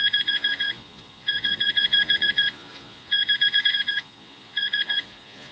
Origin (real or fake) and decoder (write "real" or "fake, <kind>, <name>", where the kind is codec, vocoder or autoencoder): fake, vocoder, Vocos